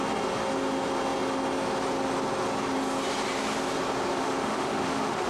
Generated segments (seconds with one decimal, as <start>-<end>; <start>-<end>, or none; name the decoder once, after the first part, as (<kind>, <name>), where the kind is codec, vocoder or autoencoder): 4.1-5.3 (autoencoder, DAC-VAE)